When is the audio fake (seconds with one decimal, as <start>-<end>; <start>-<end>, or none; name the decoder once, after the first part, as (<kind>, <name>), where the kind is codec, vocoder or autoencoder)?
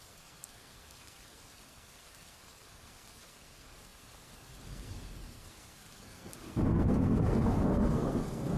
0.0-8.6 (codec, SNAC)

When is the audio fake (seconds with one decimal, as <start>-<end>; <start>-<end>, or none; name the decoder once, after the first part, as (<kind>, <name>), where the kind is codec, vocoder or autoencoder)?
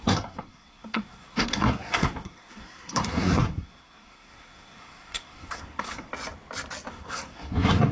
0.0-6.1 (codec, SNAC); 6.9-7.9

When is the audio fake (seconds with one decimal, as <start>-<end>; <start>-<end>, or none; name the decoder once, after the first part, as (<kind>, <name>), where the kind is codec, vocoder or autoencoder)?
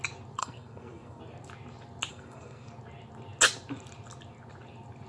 0.4-1.2 (codec, SNAC); 2.1-2.7